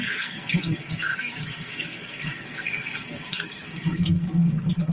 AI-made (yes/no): yes